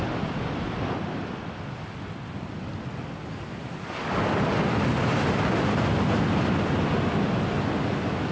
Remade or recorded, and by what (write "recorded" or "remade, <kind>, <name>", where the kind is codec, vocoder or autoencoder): recorded